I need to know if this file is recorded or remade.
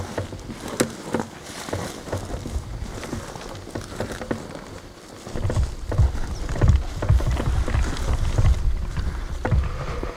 recorded